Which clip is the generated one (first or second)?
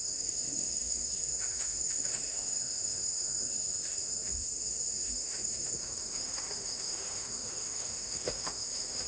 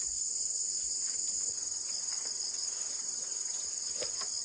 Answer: first